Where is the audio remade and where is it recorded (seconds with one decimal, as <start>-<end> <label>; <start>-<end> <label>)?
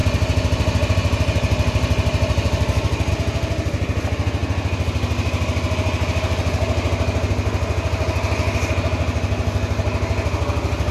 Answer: 0.0-10.9 recorded